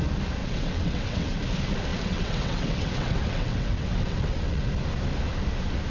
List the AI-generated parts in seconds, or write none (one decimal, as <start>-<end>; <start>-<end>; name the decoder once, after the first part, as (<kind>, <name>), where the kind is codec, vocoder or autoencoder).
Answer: 0.4-1.4 (vocoder, WaveNeXt); 1.9-4.7